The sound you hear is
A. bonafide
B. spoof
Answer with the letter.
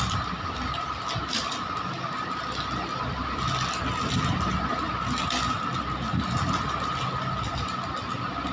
A